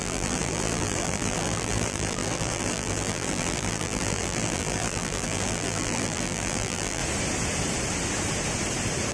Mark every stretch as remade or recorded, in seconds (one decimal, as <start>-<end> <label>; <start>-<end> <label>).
0.0-7.0 remade; 7.0-9.1 recorded